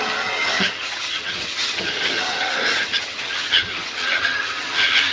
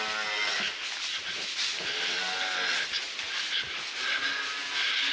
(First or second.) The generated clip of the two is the first